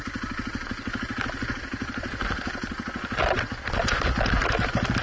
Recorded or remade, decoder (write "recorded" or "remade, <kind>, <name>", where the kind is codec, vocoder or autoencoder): recorded